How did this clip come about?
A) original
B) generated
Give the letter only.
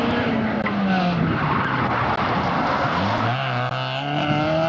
A